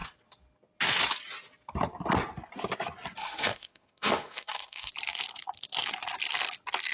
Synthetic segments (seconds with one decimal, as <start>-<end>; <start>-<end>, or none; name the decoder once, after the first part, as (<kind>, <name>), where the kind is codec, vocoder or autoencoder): 3.2-4.9 (autoencoder, DAC-VAE)